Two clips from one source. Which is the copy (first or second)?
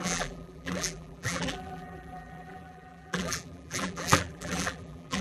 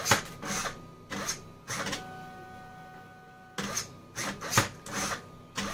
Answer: first